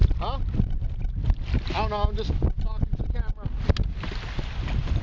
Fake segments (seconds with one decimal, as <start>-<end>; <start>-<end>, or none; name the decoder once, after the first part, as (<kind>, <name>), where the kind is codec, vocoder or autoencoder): none